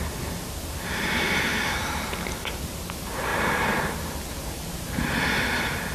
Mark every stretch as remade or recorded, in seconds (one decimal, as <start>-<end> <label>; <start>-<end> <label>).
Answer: 0.0-1.5 recorded; 1.5-2.6 remade; 2.6-3.3 recorded; 3.3-5.0 remade; 5.0-5.9 recorded